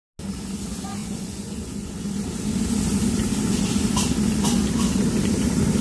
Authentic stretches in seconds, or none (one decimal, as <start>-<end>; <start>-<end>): 0.0-1.0; 1.9-5.8